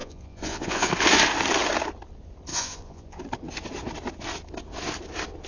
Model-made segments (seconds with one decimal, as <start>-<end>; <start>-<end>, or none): 0.0-0.9; 2.5-3.2